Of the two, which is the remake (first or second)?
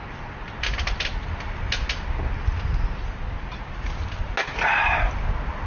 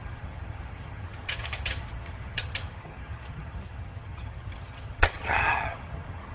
second